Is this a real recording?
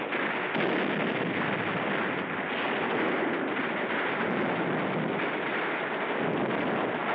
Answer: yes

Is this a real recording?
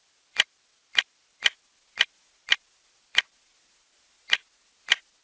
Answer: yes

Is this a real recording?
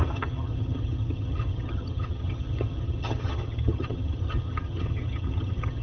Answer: no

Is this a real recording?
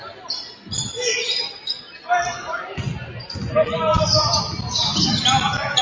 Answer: yes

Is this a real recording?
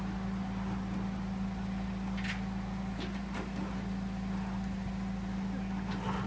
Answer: yes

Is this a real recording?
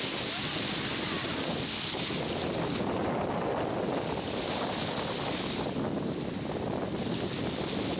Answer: yes